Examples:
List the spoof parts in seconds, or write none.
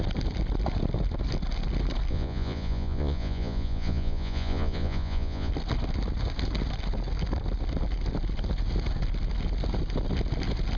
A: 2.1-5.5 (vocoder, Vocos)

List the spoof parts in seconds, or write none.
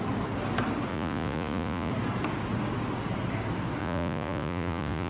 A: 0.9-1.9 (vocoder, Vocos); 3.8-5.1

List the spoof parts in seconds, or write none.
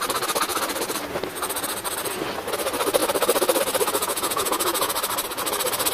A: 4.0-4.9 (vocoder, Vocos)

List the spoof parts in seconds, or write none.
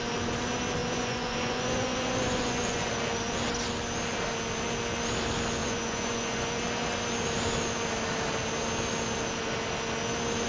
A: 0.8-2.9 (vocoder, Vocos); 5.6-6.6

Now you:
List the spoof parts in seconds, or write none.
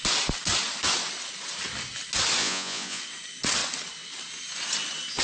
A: 2.4-3.0 (vocoder, Vocos)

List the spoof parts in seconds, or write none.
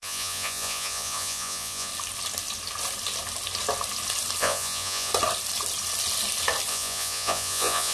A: 0.0-1.9 (vocoder, Vocos); 4.4-5.1; 6.7-7.9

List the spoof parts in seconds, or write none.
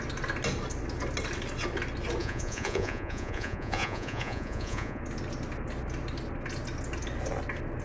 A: 2.2-5.0 (vocoder, Vocos)